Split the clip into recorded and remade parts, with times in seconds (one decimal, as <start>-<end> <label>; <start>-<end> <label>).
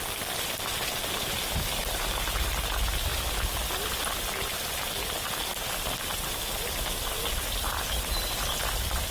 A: 0.0-9.1 recorded